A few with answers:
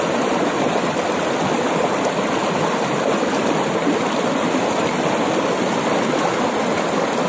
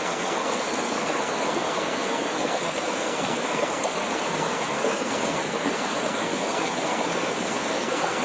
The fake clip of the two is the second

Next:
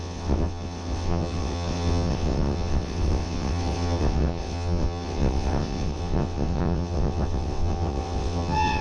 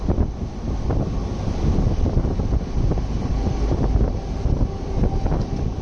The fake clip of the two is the first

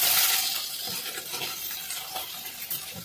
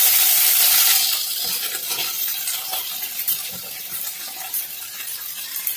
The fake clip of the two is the second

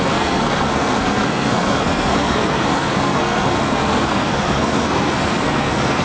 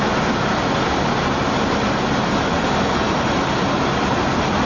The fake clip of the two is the first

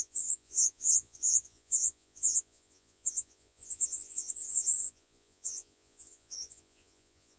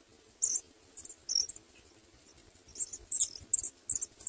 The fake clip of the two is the first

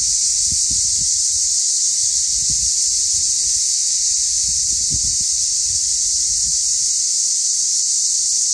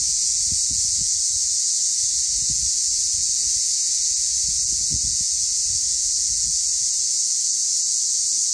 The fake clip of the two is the second